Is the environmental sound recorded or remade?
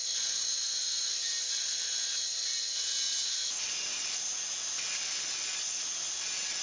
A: recorded